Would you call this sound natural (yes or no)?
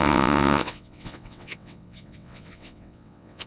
no